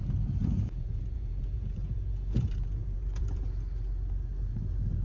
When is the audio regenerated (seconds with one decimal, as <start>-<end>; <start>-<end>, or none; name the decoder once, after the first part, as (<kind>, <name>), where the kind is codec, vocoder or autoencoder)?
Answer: 0.0-3.0 (vocoder, Vocos)